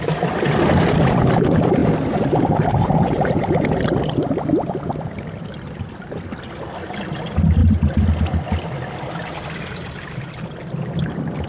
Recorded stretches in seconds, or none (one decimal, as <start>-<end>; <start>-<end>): 0.0-11.5